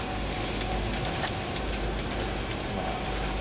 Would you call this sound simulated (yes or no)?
no